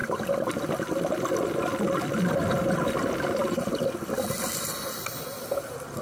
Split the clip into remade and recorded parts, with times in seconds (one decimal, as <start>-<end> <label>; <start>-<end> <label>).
0.0-2.5 recorded; 2.5-6.0 remade